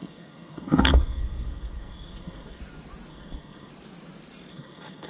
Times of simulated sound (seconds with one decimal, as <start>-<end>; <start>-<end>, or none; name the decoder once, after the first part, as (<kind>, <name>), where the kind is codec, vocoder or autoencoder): 0.0-2.6 (codec, SNAC); 3.1-3.7; 4.5-5.1